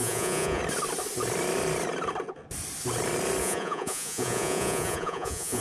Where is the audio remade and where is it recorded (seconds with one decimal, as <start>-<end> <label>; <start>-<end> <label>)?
0.0-0.6 remade; 0.6-3.4 recorded; 3.4-5.6 remade